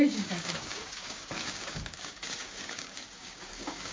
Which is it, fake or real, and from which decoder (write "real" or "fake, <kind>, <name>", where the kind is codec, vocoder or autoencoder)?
fake, codec, DAC